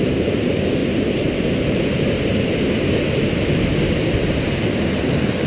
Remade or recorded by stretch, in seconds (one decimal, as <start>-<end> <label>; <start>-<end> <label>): 0.0-5.5 recorded